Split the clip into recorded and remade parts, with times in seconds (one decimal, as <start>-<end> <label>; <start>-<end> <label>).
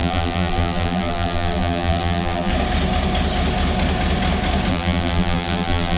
0.0-2.5 remade; 2.5-4.7 recorded; 4.7-6.0 remade